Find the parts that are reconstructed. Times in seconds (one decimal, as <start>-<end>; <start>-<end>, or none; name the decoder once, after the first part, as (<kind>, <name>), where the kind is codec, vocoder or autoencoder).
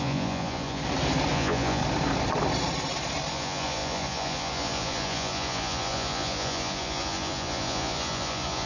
0.0-0.8 (vocoder, Vocos); 1.3-1.8; 3.3-8.7